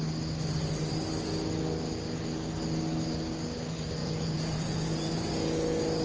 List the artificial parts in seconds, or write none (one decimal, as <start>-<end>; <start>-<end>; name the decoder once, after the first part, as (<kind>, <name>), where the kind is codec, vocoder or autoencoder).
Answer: 4.0-5.3 (vocoder, Vocos)